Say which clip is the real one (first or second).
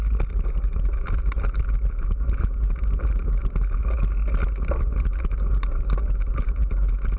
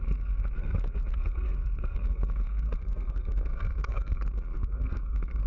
first